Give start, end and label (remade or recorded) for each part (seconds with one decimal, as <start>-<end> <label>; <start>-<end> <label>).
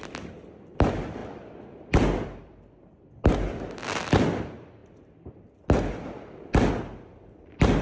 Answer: 0.0-7.8 recorded